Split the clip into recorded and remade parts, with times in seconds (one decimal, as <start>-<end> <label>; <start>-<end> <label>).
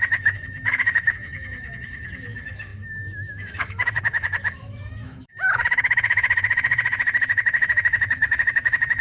0.0-9.0 remade